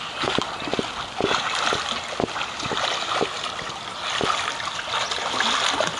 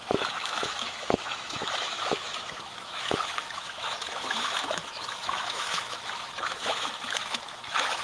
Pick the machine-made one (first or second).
second